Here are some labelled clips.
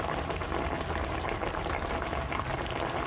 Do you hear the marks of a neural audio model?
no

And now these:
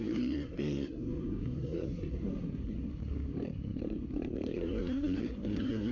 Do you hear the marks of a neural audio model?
yes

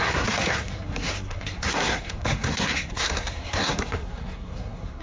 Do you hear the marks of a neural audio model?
yes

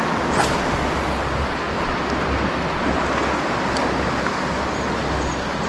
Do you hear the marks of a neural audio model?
no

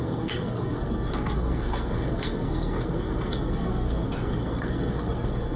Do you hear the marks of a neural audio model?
yes